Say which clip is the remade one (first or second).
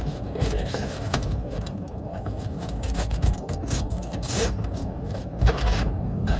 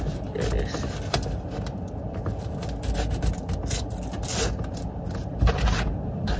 first